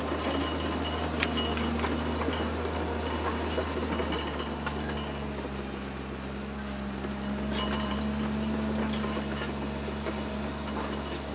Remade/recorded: recorded